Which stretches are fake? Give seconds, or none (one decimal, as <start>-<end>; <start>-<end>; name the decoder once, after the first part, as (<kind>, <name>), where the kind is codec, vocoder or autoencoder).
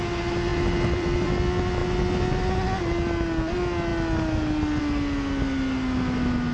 0.5-1.3 (vocoder, BigVGAN v2)